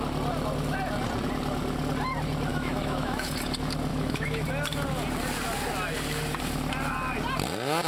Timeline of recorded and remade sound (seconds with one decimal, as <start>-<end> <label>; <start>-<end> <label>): 0.0-2.5 recorded; 2.5-3.3 remade; 3.3-3.9 recorded; 3.9-4.5 remade; 4.5-7.9 recorded